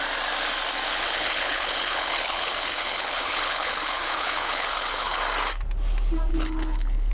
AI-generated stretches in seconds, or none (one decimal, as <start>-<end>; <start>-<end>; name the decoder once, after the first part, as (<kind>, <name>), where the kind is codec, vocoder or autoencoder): 0.9-5.2 (codec, HILCodec); 6.3-7.1